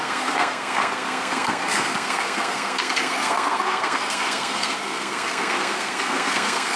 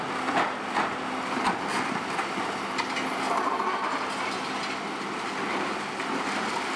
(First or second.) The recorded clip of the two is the second